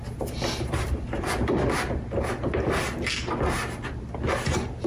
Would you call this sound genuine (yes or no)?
yes